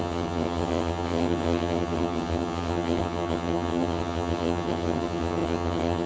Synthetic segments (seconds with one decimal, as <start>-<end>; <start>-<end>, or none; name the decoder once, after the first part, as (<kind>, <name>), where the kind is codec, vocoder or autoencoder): 0.0-6.1 (vocoder, HiFi-GAN)